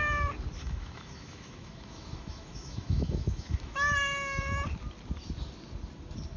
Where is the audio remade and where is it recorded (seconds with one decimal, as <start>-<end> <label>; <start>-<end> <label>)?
0.0-0.6 recorded; 0.6-4.4 remade; 4.4-6.4 recorded